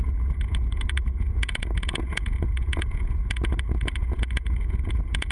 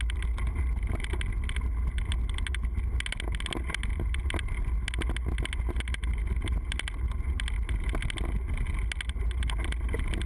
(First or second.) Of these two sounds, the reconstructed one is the first